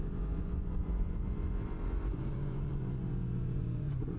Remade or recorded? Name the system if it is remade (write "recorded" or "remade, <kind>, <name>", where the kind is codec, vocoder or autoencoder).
remade, vocoder, Vocos